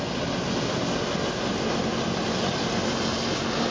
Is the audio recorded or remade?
recorded